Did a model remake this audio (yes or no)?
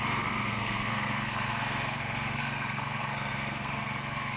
yes